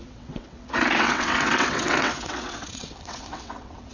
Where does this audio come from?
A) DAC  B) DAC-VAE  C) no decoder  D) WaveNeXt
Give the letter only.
D